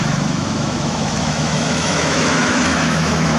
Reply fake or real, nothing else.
fake